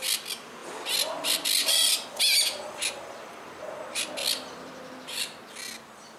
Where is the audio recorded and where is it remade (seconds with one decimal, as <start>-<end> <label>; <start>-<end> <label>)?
0.0-6.2 recorded